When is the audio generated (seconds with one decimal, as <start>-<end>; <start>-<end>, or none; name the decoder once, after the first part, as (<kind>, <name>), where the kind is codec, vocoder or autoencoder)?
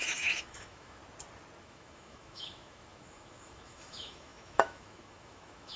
0.0-1.0 (autoencoder, DAC-VAE); 1.6-5.8